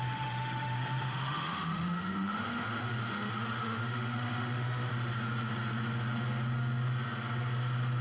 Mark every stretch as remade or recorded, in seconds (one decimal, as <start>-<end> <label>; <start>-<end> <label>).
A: 0.0-4.9 remade; 4.9-8.0 recorded